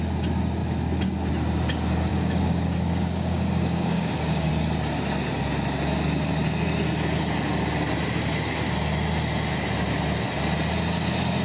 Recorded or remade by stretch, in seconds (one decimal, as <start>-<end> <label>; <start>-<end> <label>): 0.0-2.1 recorded; 2.1-4.5 remade; 4.5-11.4 recorded